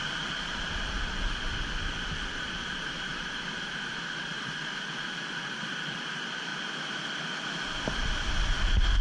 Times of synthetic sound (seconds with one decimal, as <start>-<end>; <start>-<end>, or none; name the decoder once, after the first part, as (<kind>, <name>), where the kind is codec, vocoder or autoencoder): 0.0-9.0 (vocoder, BigVGAN v2)